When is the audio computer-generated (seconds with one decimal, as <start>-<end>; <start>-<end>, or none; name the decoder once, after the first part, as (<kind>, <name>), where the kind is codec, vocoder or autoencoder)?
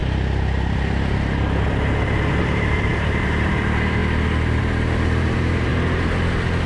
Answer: 2.4-4.0 (vocoder, BigVGAN v2); 4.6-5.7